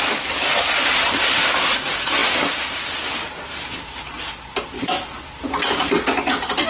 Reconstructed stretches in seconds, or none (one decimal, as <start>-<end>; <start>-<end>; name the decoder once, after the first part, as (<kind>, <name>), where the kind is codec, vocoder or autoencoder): none